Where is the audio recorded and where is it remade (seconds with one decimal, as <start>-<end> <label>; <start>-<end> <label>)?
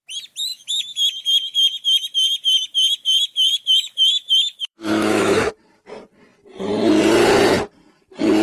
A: 0.0-0.5 recorded; 0.5-5.5 remade; 5.5-8.4 recorded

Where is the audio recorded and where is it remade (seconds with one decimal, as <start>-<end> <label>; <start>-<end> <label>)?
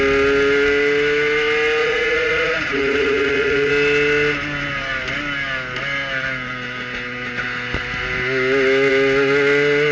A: 0.0-1.8 recorded; 1.8-3.7 remade; 3.7-9.9 recorded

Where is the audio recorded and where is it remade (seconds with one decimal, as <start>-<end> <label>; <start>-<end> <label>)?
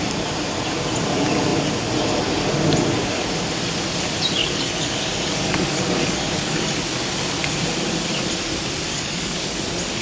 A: 0.0-4.4 recorded; 4.4-6.7 remade; 6.7-8.9 recorded; 8.9-9.6 remade; 9.6-10.0 recorded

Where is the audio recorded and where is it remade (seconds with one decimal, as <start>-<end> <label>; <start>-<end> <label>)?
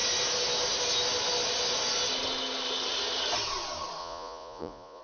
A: 0.0-4.0 recorded; 4.0-5.0 remade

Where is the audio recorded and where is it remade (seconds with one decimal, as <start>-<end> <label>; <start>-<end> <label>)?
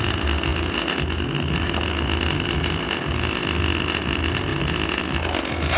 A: 0.0-5.8 recorded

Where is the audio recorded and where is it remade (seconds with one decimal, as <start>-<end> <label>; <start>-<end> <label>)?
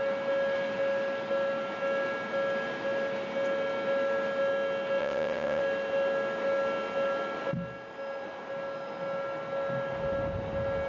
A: 0.0-5.0 recorded; 5.0-5.6 remade; 5.6-10.9 recorded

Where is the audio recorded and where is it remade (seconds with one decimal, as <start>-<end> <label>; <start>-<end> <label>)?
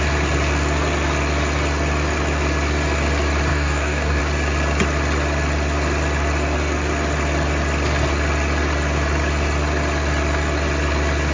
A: 0.0-3.5 recorded; 3.5-4.2 remade; 4.2-11.3 recorded